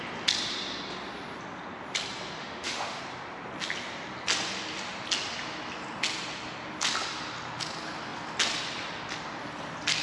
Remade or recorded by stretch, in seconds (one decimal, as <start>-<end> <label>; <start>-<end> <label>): 0.0-2.4 recorded; 2.4-3.0 remade; 3.0-10.0 recorded